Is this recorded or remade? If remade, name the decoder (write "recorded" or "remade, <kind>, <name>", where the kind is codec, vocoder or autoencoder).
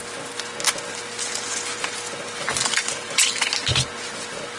recorded